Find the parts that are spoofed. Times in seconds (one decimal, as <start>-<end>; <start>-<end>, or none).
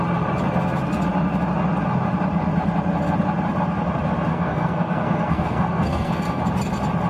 4.3-6.4